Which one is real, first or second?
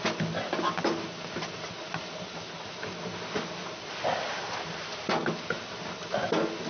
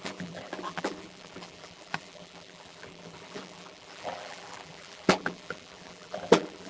first